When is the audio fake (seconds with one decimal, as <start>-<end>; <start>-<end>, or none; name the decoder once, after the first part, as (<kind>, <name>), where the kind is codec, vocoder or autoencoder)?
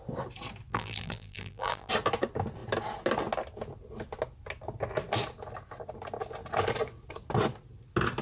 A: 0.7-1.9 (vocoder, BigVGAN v2)